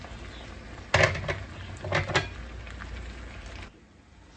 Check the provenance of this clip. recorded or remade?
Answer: recorded